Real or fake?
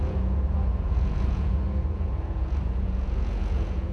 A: fake